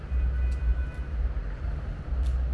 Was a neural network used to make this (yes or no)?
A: no